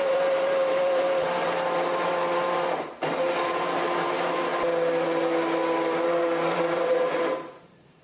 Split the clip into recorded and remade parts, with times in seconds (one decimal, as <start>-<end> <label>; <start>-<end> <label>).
0.0-4.5 remade; 4.5-6.2 recorded; 6.2-8.0 remade